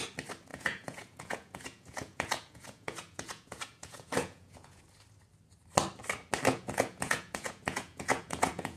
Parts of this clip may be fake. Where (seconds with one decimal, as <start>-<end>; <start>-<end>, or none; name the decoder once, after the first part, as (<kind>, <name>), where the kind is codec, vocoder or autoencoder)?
0.5-4.8 (vocoder, Vocos); 6.5-8.8